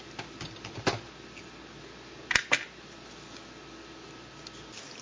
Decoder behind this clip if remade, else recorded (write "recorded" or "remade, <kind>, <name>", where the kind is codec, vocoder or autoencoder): recorded